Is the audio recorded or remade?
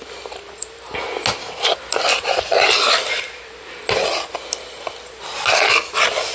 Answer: recorded